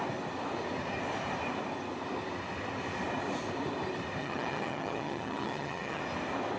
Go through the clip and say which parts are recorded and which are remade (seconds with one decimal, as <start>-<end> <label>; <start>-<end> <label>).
0.0-4.2 recorded; 4.2-6.0 remade; 6.0-6.6 recorded